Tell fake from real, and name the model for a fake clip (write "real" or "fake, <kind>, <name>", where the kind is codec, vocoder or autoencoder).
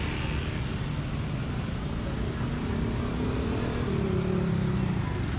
real